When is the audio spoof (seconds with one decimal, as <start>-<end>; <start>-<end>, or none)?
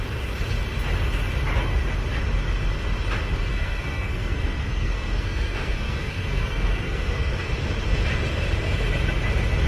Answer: 3.5-7.5